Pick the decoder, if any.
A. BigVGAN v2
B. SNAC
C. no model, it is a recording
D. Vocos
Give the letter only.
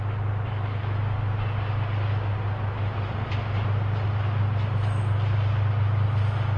C